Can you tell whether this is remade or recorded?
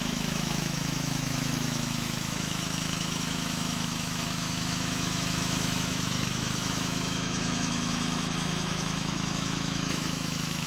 remade